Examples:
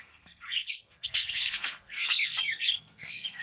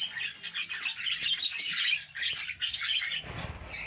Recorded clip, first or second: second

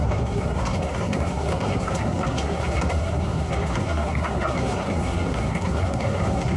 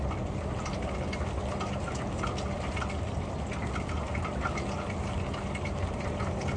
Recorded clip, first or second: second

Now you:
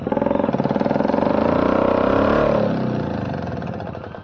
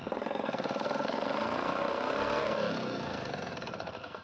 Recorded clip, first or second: first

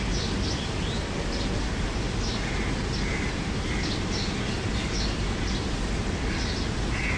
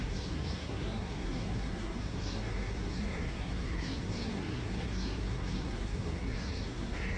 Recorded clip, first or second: first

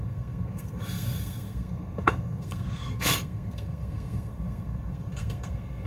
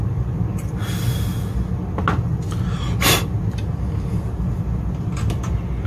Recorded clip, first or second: second